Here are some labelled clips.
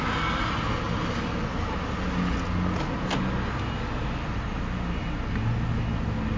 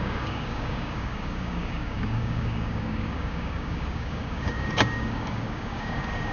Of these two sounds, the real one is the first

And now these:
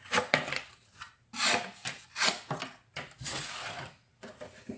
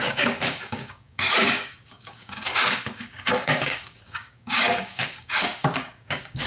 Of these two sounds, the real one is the first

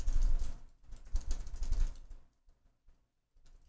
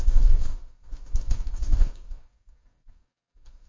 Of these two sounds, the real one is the first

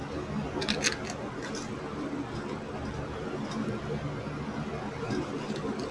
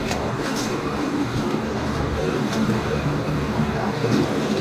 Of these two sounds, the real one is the first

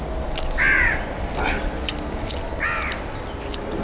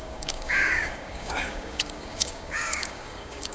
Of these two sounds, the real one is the first